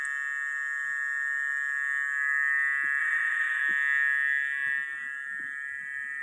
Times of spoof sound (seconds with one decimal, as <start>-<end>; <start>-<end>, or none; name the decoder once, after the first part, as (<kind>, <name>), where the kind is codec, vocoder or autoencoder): 3.0-3.6 (vocoder, Vocos)